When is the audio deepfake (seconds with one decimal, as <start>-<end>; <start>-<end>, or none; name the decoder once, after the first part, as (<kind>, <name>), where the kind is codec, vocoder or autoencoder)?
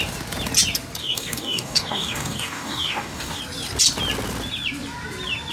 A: 1.0-3.4 (codec, DAC)